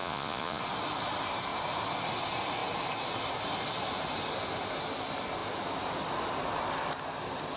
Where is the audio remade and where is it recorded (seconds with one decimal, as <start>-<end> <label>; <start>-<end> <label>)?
0.0-0.6 remade; 0.6-7.6 recorded